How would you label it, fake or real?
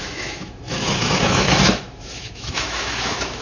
fake